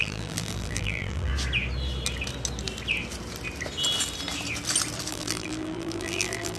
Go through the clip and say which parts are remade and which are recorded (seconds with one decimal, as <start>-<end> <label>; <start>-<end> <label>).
0.0-1.3 remade; 1.3-5.1 recorded; 5.1-6.6 remade